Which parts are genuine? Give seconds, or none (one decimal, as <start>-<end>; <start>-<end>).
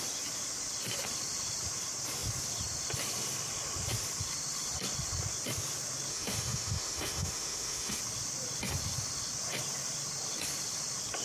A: 0.0-6.1; 8.0-11.2